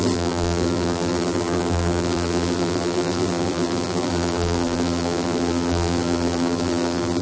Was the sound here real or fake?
fake